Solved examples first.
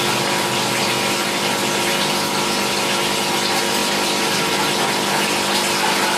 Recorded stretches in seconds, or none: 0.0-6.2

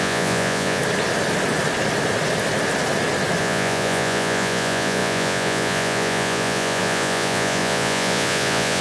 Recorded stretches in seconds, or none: 0.8-3.4

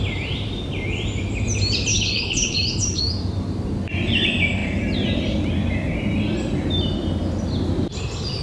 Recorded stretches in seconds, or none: 0.0-1.9; 3.0-8.4

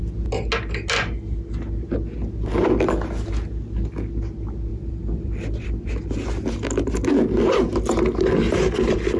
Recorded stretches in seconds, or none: 0.0-4.7; 6.0-9.2

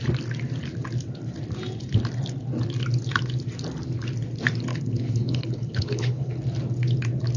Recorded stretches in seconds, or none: 0.0-4.7; 6.3-7.4